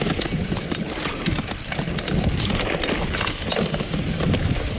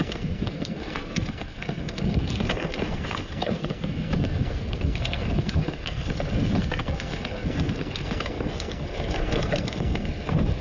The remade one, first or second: second